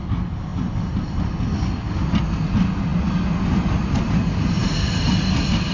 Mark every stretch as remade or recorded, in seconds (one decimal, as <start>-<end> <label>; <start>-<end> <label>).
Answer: 0.0-5.7 recorded

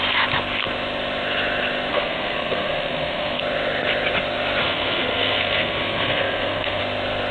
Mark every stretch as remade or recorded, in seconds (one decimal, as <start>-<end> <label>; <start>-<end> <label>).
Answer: 0.0-1.9 recorded; 1.9-3.4 remade; 3.4-4.6 recorded; 4.6-6.8 remade; 6.8-7.3 recorded

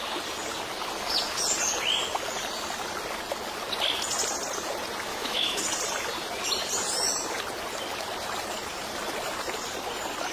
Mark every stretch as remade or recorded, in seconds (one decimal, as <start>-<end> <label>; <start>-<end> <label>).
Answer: 0.0-5.1 recorded; 5.1-5.6 remade; 5.6-10.3 recorded